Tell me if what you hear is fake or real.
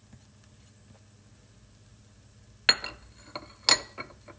real